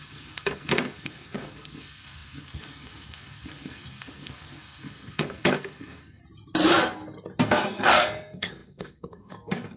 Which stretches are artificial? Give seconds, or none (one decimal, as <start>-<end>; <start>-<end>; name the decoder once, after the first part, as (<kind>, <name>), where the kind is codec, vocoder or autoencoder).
0.0-6.2 (codec, SNAC); 7.4-9.8